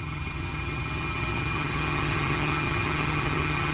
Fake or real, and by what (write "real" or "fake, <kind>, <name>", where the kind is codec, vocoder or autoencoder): fake, vocoder, HiFi-GAN